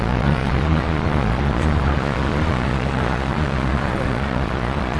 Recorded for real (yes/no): no